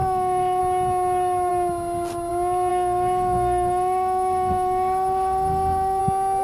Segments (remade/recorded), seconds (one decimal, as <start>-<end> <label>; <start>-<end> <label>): 0.0-0.6 remade; 0.6-2.7 recorded; 2.7-6.0 remade; 6.0-6.4 recorded